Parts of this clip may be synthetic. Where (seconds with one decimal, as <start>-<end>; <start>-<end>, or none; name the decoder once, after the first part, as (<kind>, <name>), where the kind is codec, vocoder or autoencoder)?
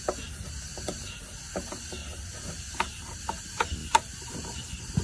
3.8-4.6 (vocoder, BigVGAN v2)